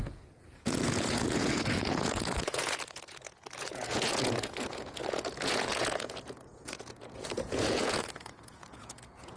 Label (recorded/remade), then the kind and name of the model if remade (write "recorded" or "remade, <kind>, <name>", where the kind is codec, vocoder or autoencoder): remade, vocoder, Vocos